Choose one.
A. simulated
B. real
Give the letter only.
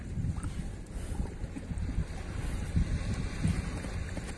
B